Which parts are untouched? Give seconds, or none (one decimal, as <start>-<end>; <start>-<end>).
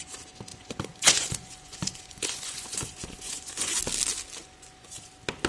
0.0-0.5; 3.8-4.4; 5.1-5.5